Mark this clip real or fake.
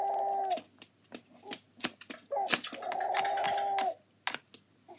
real